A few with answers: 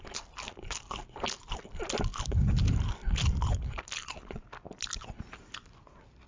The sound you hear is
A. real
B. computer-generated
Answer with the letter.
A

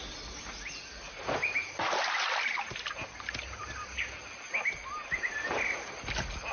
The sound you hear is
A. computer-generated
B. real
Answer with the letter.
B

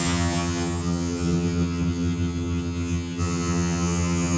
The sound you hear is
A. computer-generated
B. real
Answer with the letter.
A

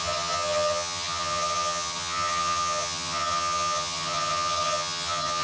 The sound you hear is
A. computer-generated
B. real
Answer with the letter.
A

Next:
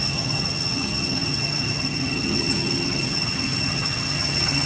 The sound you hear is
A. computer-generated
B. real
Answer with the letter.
A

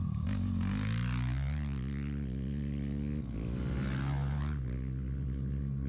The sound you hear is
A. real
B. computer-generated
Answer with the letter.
A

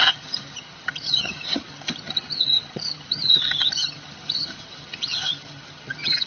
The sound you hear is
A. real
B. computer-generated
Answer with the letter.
B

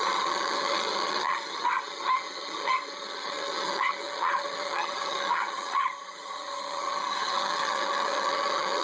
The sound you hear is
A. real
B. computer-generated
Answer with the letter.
B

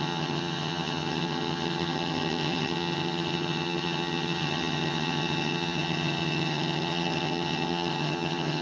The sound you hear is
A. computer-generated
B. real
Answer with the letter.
A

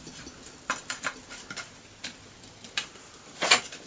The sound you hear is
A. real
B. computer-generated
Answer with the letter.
A